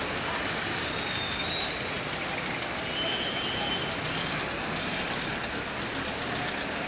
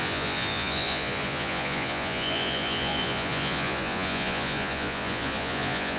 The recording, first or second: first